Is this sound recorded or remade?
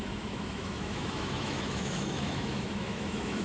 remade